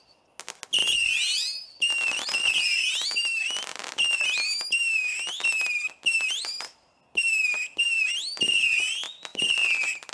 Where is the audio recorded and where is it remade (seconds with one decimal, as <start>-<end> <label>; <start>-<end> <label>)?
0.0-10.1 recorded